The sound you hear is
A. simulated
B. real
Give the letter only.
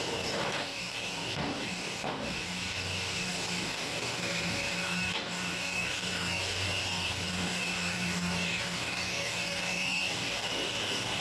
A